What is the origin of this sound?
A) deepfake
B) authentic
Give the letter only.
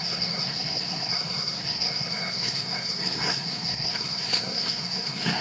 A